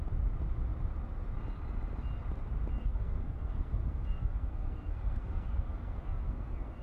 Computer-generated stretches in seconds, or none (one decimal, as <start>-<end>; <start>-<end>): 2.8-6.8

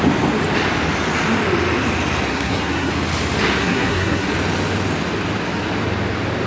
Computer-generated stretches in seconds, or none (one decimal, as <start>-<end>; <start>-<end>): 2.3-2.9; 3.6-4.3

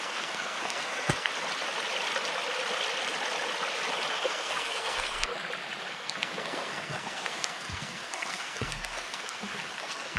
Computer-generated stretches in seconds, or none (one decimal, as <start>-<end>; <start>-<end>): 0.0-1.3; 4.1-5.3; 5.8-10.2

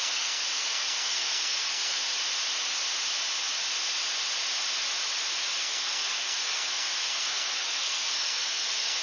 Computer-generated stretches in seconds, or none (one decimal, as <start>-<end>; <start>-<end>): 0.0-2.0; 5.6-9.0

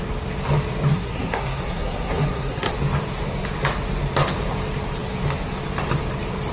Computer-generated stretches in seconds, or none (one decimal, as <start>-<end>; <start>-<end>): 0.9-2.7

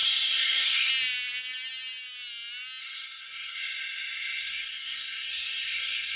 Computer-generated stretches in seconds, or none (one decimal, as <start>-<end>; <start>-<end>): 0.0-0.9; 2.8-6.2